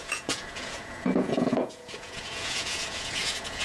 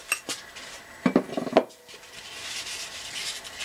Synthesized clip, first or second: first